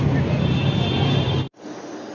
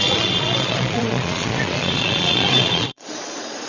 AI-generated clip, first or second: second